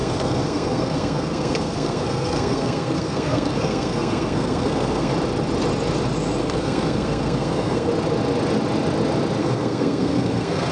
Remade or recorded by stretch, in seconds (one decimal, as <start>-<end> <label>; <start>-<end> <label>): 0.0-5.1 remade; 5.1-6.4 recorded; 6.4-7.9 remade; 7.9-9.4 recorded; 9.4-10.7 remade